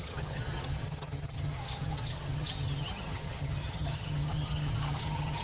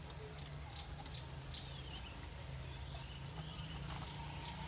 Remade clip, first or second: first